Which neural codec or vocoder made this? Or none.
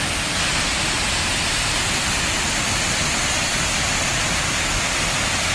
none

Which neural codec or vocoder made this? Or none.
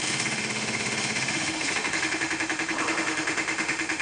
autoencoder, DAC-VAE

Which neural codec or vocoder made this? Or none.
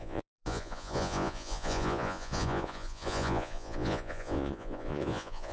vocoder, Vocos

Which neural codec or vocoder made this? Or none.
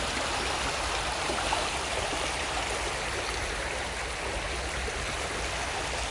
none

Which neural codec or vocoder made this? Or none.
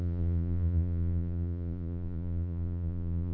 vocoder, Vocos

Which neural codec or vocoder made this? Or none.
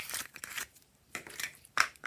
vocoder, BigVGAN v2